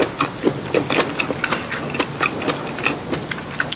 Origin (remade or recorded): recorded